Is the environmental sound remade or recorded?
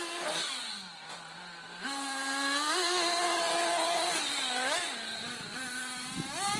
recorded